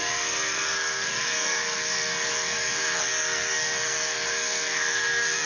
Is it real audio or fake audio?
fake